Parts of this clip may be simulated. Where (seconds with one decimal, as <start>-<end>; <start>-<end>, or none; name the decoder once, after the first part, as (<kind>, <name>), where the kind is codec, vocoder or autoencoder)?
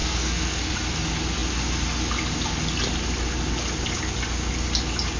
0.0-0.7 (codec, SNAC)